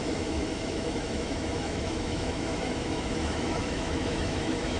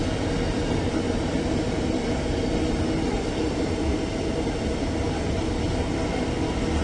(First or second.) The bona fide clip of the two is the second